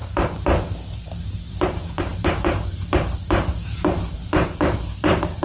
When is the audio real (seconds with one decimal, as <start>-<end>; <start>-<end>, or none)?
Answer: none